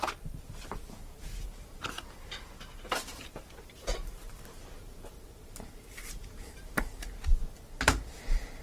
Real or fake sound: fake